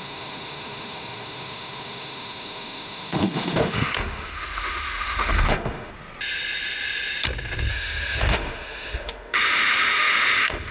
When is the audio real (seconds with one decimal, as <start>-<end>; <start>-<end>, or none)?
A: 5.9-7.7